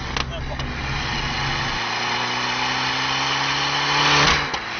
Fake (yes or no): no